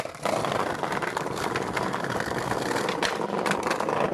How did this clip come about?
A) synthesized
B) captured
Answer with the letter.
B